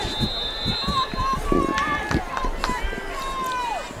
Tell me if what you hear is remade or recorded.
recorded